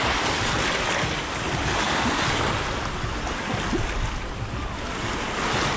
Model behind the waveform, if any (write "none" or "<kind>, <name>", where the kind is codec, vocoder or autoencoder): none